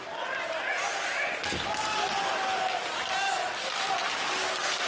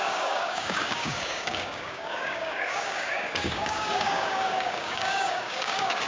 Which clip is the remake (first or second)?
second